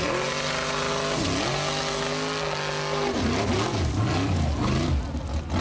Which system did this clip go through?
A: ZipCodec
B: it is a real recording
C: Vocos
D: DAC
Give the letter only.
B